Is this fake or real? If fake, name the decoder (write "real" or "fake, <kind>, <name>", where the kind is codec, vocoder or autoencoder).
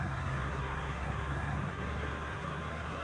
fake, codec, SNAC